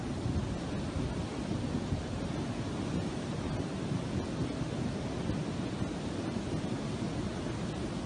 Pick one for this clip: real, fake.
real